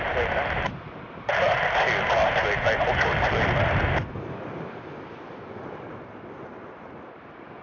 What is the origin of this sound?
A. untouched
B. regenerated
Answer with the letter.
A